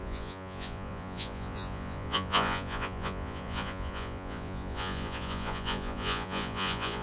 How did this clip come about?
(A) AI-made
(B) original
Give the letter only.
A